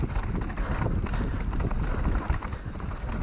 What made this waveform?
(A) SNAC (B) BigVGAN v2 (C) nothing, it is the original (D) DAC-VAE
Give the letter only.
C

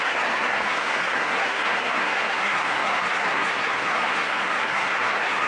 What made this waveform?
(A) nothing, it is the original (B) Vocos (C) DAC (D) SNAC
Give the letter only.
D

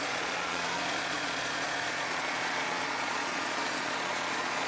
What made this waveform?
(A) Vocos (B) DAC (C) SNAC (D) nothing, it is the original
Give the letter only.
A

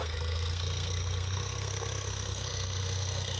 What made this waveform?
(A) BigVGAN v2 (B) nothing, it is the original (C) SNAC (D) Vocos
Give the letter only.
C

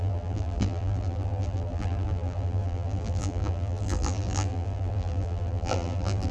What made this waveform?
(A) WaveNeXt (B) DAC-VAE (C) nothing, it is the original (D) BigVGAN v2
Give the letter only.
D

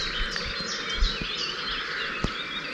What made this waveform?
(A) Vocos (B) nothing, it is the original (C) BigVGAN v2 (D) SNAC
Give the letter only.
B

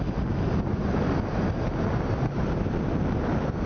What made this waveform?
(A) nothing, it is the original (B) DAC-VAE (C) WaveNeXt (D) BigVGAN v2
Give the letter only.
A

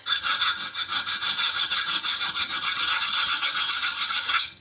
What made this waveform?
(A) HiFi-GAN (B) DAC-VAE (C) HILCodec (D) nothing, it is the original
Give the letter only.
A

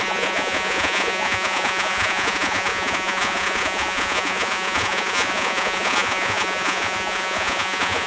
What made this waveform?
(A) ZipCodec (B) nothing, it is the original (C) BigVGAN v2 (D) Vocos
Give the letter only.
D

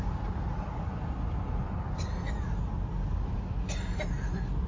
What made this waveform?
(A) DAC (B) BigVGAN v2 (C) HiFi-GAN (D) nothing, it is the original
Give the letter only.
D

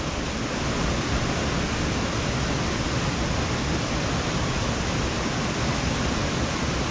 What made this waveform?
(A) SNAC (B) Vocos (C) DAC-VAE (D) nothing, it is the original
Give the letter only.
D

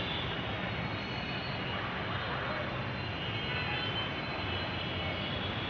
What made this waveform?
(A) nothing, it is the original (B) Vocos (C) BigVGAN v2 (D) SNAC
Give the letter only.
A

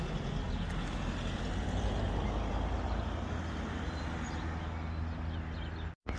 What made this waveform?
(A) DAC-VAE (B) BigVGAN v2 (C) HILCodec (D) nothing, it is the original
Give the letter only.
D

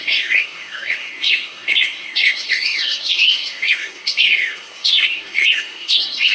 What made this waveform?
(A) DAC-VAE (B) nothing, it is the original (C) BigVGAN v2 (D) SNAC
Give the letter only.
D